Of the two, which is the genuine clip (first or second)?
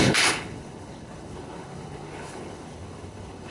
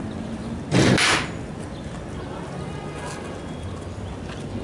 second